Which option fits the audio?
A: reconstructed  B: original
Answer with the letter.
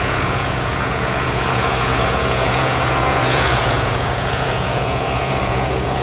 A